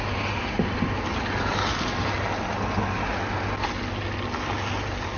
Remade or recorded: recorded